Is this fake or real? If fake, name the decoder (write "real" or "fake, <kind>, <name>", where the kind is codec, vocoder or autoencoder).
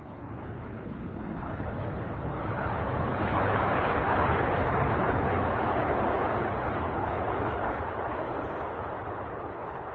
fake, codec, HILCodec